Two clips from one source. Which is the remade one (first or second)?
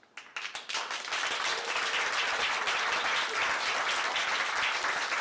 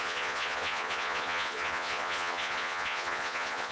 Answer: second